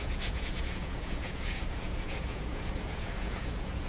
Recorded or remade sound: remade